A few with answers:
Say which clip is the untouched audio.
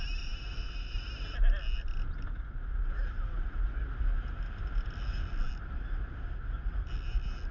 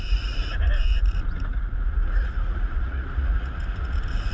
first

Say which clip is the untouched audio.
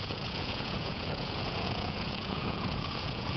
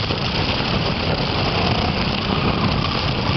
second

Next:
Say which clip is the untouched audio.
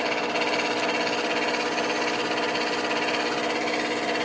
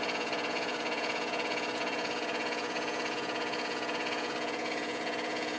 first